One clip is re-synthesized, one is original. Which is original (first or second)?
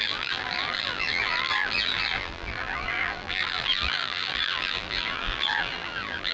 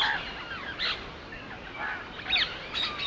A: second